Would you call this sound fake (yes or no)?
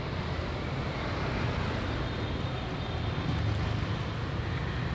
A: no